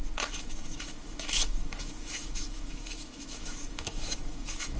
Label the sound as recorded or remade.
remade